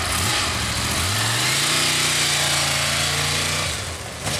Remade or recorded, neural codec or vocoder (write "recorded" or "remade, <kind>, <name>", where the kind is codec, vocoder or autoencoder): recorded